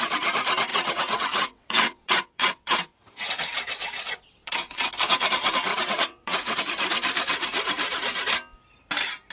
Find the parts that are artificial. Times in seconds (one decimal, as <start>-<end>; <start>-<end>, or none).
0.7-4.9; 5.7-6.6